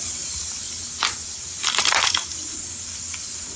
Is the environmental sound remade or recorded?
recorded